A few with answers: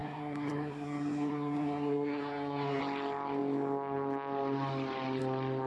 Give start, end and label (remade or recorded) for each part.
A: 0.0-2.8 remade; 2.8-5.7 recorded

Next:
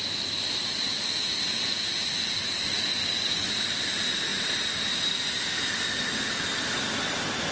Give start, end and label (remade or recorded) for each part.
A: 0.0-3.0 recorded; 3.0-3.5 remade; 3.5-7.5 recorded

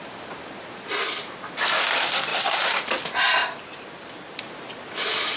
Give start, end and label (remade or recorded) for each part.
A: 0.0-2.3 recorded; 2.3-3.0 remade; 3.0-3.4 recorded; 3.4-4.4 remade; 4.4-5.4 recorded

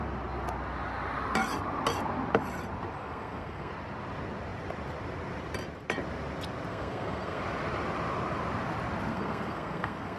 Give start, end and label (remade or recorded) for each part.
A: 0.0-3.0 recorded; 3.0-3.7 remade; 3.7-6.7 recorded; 6.7-7.4 remade; 7.4-9.1 recorded; 9.1-10.2 remade

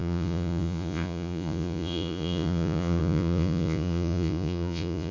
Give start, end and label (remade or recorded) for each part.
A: 0.0-5.1 remade